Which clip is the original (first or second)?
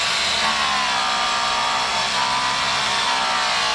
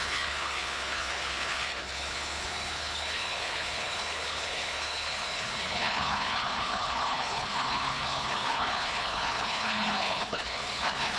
first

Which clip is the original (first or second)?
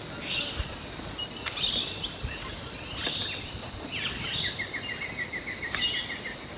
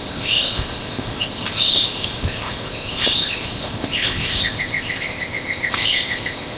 first